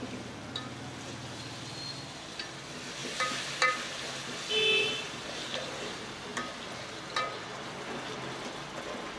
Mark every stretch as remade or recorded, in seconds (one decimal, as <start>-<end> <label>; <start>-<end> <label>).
0.0-9.2 recorded